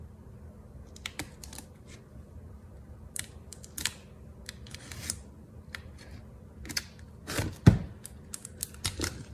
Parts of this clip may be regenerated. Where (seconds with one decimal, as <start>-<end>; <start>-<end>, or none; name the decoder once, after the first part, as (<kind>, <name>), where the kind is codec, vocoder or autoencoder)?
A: 0.0-3.5 (vocoder, BigVGAN v2); 5.4-6.2; 8.7-9.3